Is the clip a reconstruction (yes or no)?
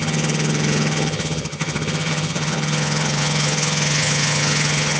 yes